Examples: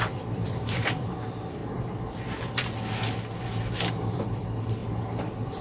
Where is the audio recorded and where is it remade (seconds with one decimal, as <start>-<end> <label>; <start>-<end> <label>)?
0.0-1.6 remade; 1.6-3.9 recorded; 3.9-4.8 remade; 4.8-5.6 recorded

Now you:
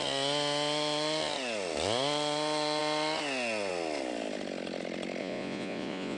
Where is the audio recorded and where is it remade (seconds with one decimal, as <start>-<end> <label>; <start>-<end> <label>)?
0.0-5.2 recorded; 5.2-6.2 remade

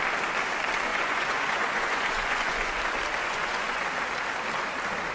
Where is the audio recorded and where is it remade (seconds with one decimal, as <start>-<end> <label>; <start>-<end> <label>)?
0.0-0.9 recorded; 0.9-2.8 remade; 2.8-3.2 recorded; 3.2-3.8 remade; 3.8-5.1 recorded

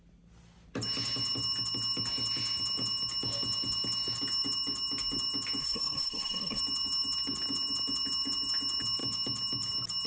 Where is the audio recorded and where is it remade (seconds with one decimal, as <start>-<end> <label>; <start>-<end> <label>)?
0.0-5.6 recorded; 5.6-6.6 remade; 6.6-10.1 recorded

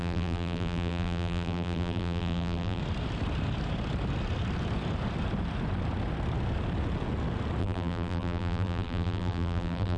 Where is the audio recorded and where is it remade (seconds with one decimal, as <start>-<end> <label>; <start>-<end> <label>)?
0.0-2.8 remade; 2.8-7.6 recorded; 7.6-10.0 remade

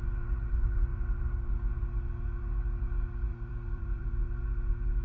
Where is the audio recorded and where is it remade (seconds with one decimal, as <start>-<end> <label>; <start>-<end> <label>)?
0.0-3.3 recorded; 3.3-4.1 remade; 4.1-5.0 recorded